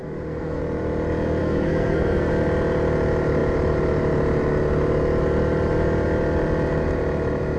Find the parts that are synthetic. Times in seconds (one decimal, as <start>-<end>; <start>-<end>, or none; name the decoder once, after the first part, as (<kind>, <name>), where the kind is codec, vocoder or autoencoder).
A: 0.0-0.6 (codec, SNAC); 1.4-2.3